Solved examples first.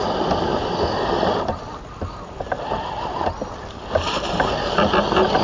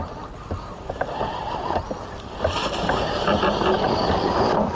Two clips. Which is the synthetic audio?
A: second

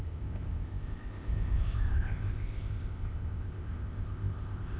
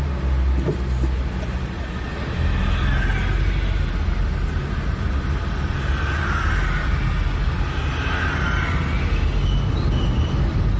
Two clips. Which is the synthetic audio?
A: first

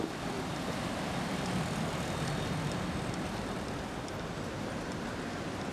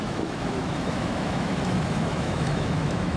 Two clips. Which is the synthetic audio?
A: second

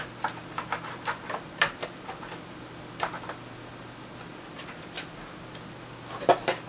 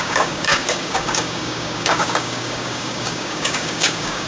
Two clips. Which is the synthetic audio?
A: second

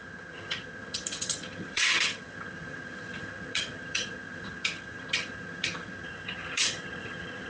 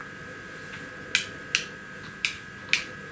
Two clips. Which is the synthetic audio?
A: first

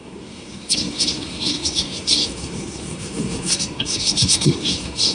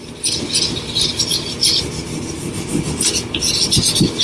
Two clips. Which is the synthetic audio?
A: first